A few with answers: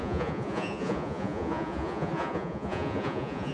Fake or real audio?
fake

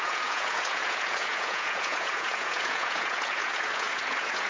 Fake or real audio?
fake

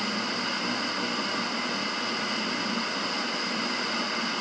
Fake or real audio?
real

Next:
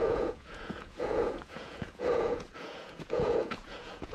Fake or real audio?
fake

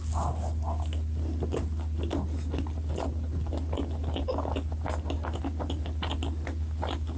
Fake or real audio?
real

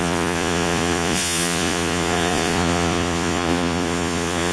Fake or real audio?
fake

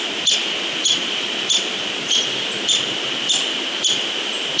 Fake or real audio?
real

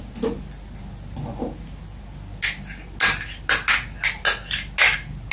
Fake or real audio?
real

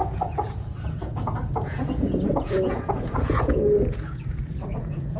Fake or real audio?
fake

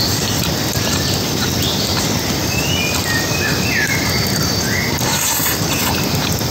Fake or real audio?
real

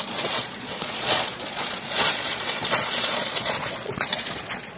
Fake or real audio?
fake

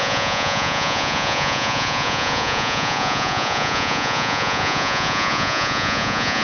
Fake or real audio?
fake